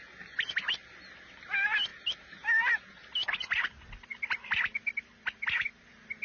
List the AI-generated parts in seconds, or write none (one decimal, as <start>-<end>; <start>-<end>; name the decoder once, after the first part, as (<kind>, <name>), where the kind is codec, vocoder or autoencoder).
none